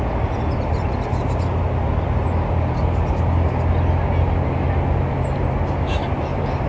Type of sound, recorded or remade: recorded